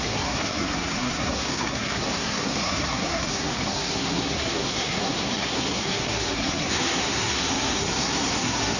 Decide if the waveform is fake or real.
fake